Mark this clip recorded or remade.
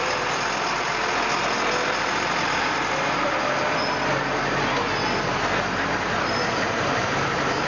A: recorded